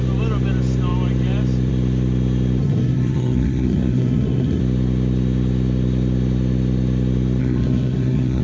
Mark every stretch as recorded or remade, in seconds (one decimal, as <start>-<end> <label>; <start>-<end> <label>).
0.0-2.6 recorded; 2.6-4.6 remade; 4.6-7.4 recorded; 7.4-8.4 remade